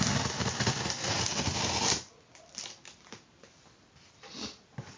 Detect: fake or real real